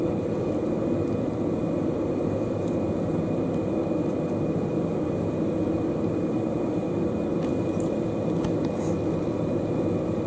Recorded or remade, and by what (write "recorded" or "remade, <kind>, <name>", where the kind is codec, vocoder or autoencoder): recorded